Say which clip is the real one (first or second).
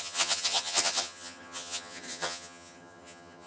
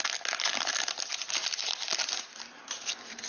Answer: second